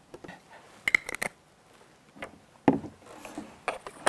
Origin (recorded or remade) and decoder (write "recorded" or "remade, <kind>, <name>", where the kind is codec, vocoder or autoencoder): recorded